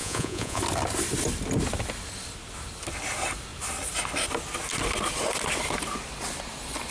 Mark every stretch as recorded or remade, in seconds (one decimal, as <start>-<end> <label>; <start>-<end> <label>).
0.0-0.6 remade; 0.6-6.9 recorded